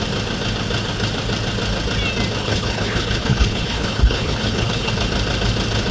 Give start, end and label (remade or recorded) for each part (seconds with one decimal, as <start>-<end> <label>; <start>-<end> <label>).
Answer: 0.0-2.4 recorded; 2.4-4.9 remade; 4.9-5.9 recorded